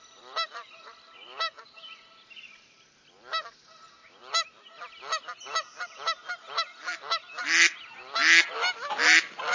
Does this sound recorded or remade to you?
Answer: recorded